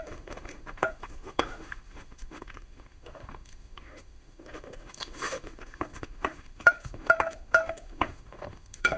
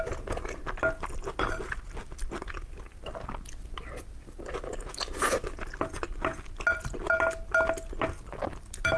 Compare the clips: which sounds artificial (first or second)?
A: first